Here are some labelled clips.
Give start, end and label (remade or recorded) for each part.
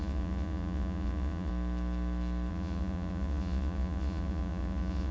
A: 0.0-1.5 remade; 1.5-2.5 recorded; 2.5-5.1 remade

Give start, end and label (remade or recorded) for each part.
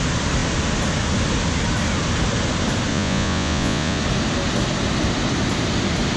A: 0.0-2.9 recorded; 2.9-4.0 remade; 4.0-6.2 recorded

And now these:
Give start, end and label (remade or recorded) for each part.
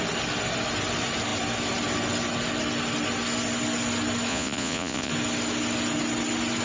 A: 0.0-4.3 recorded; 4.3-5.1 remade; 5.1-6.6 recorded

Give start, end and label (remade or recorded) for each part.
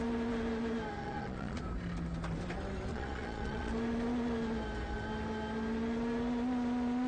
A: 0.0-1.0 recorded; 1.0-1.6 remade; 1.6-2.9 recorded; 2.9-3.7 remade; 3.7-7.1 recorded